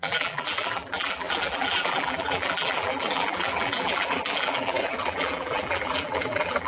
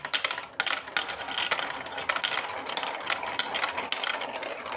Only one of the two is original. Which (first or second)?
second